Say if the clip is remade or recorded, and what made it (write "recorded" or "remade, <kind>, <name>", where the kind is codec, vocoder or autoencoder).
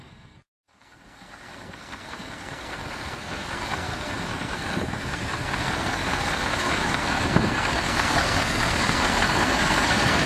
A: remade, codec, SNAC